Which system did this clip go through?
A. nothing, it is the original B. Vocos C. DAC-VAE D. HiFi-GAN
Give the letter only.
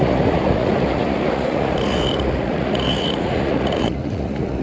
B